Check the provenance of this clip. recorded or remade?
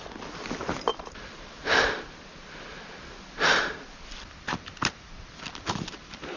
recorded